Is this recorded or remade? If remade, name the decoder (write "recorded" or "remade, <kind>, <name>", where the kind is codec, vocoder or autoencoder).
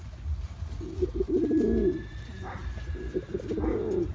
recorded